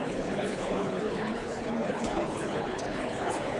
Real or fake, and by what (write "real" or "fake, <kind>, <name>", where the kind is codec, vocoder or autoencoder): fake, codec, HILCodec